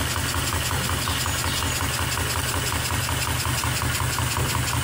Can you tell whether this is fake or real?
real